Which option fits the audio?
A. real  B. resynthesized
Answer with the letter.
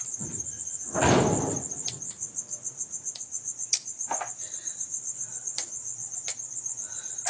A